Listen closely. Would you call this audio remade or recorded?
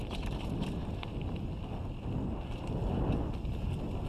recorded